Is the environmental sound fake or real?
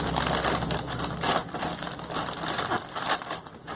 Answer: real